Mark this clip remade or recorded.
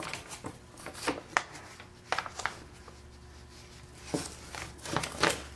recorded